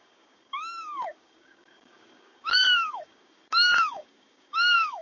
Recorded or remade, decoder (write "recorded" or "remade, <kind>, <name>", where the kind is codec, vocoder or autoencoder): remade, codec, DAC